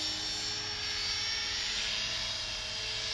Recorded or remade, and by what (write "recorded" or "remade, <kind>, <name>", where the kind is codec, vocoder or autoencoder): recorded